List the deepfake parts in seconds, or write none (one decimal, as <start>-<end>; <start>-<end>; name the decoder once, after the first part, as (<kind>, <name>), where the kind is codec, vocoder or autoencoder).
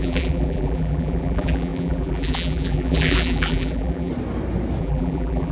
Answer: 0.0-4.1 (vocoder, BigVGAN v2); 4.8-5.5